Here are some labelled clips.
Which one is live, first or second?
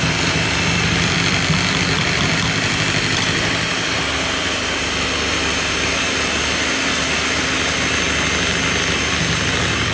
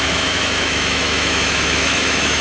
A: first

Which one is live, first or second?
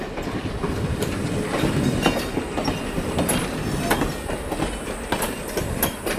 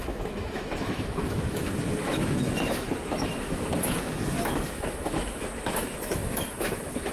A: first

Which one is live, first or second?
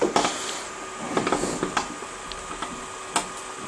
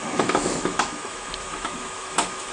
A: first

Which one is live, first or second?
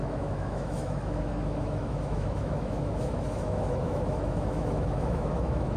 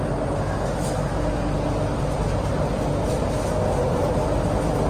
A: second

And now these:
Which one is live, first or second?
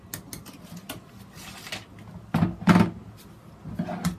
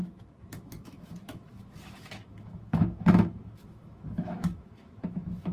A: first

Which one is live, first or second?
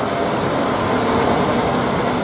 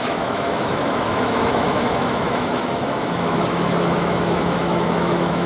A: first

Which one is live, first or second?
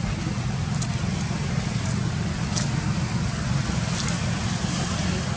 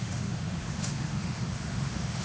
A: first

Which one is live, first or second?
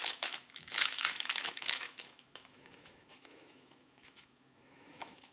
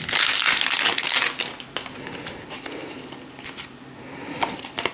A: second